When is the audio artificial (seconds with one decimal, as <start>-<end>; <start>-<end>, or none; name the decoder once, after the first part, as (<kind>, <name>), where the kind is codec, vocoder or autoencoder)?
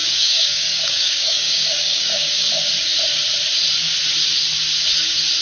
0.0-2.5 (codec, DAC)